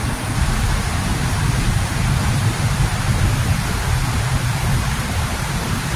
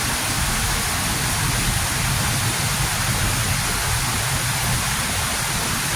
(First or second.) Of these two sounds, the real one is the second